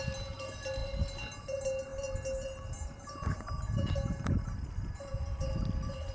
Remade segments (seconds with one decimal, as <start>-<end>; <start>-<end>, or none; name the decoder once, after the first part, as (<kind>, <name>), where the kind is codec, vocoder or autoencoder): none

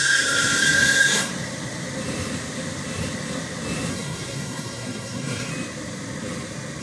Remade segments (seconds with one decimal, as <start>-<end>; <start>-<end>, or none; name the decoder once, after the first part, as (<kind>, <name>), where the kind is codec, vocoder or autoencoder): 0.0-1.3 (codec, SNAC); 3.9-5.5

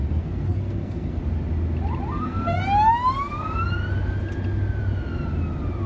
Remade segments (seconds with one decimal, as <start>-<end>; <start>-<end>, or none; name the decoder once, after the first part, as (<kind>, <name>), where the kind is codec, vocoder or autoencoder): 0.0-1.2 (codec, SNAC); 2.1-2.6

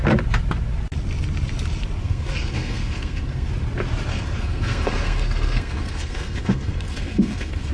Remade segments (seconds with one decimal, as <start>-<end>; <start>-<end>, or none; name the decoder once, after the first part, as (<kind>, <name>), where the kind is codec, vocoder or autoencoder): 2.0-3.5 (codec, SNAC); 4.1-7.7

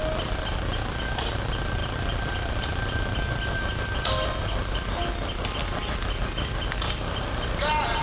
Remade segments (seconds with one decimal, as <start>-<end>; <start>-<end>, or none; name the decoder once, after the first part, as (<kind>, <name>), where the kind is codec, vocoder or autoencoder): none

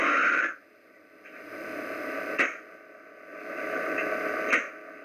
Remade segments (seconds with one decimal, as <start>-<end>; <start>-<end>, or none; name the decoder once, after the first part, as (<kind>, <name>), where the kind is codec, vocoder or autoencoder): none

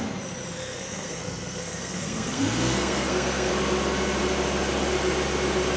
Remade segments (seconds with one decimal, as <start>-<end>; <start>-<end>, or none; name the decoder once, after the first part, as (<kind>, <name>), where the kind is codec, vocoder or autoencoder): 0.6-3.5 (codec, SNAC)

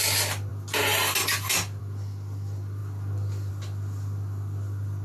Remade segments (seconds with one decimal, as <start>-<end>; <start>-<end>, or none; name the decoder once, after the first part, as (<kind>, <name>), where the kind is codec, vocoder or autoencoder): none